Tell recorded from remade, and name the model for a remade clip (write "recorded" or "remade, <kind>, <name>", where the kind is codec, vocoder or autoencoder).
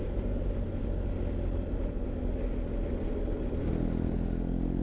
recorded